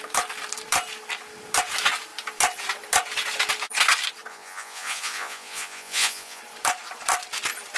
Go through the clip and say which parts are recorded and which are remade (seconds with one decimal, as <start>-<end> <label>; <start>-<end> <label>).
0.0-4.3 recorded; 4.3-6.4 remade; 6.4-7.8 recorded